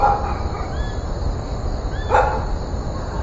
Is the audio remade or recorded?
recorded